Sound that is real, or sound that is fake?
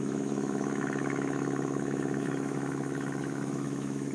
fake